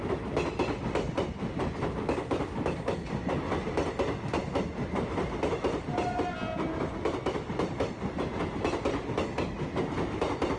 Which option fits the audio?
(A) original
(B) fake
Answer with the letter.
A